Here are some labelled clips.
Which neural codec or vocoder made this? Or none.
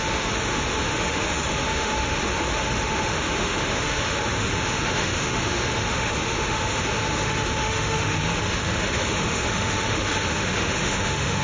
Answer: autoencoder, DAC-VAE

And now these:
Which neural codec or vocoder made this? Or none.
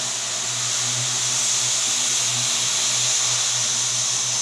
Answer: none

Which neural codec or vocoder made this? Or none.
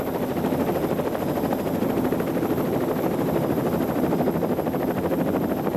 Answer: none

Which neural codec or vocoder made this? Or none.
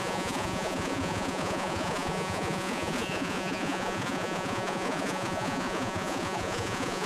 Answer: vocoder, Vocos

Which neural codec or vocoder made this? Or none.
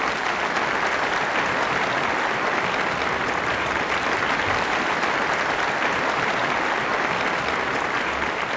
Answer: none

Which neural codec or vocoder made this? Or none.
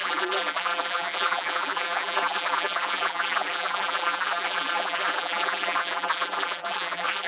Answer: vocoder, BigVGAN v2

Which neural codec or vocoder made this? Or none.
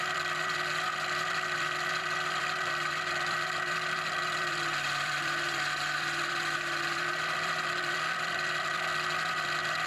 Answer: vocoder, BigVGAN v2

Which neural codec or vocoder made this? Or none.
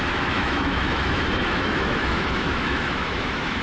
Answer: autoencoder, DAC-VAE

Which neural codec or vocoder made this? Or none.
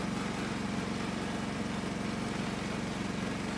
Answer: none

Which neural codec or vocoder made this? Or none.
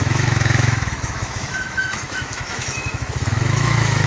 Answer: autoencoder, DAC-VAE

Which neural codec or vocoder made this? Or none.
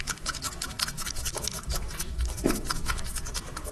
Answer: autoencoder, DAC-VAE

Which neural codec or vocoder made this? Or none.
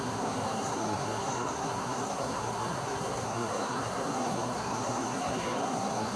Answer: codec, SNAC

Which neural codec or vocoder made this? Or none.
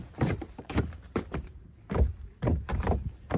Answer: vocoder, BigVGAN v2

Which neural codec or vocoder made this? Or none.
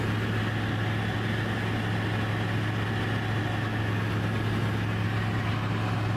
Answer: none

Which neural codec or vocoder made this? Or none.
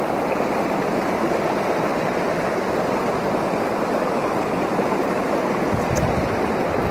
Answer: none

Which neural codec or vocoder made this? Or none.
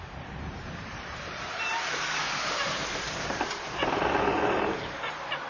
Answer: vocoder, BigVGAN v2